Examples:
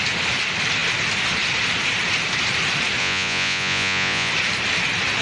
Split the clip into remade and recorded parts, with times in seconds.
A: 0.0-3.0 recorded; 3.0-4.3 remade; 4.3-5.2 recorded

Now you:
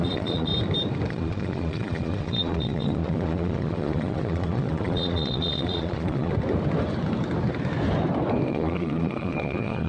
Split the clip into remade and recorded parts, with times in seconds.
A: 0.0-0.5 remade; 0.5-1.1 recorded; 1.1-6.3 remade; 6.3-8.5 recorded; 8.5-9.9 remade

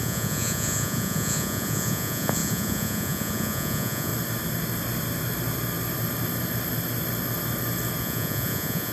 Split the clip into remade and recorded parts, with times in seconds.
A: 0.0-4.1 remade; 4.1-8.0 recorded; 8.0-8.9 remade

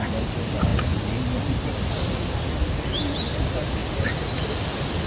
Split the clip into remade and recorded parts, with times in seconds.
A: 0.0-5.1 recorded

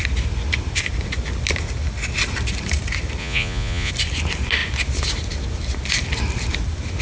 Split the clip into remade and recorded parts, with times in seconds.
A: 0.0-3.2 recorded; 3.2-3.9 remade; 3.9-7.0 recorded

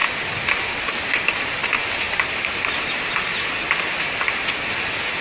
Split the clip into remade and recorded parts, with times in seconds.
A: 0.0-5.2 recorded

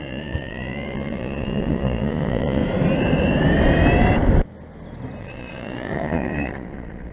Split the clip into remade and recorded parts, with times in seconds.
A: 0.0-2.6 remade; 2.6-5.2 recorded; 5.2-7.1 remade